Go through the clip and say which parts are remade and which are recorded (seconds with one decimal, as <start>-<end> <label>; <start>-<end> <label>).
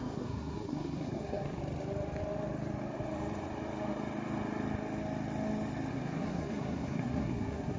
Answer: 0.0-1.6 remade; 1.6-5.9 recorded; 5.9-7.8 remade